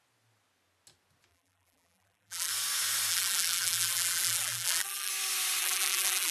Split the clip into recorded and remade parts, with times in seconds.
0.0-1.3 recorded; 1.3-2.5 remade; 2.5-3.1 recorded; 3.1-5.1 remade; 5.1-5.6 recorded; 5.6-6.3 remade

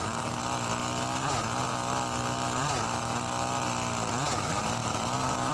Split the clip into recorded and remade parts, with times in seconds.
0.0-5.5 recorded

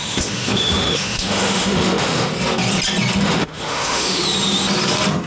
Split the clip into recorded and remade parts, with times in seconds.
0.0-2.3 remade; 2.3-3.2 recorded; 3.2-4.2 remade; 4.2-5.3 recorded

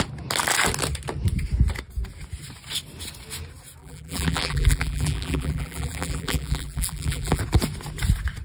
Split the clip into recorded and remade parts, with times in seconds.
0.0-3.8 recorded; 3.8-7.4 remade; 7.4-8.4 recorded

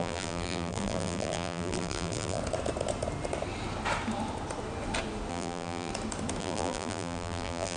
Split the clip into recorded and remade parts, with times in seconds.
0.0-2.4 remade; 2.4-5.3 recorded; 5.3-5.9 remade; 5.9-6.4 recorded; 6.4-7.8 remade

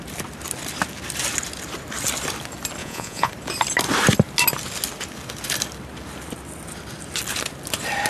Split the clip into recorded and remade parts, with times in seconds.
0.0-2.8 recorded; 2.8-3.3 remade; 3.3-8.1 recorded

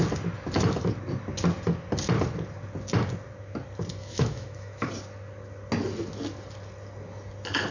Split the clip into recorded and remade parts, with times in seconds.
0.0-4.0 recorded; 4.0-4.9 remade; 4.9-7.7 recorded

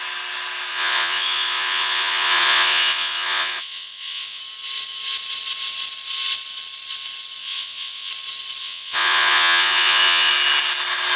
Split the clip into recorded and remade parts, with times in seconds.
0.0-0.7 recorded; 0.7-4.4 remade; 4.4-7.4 recorded; 7.4-8.1 remade; 8.1-8.6 recorded; 8.6-10.3 remade; 10.3-11.2 recorded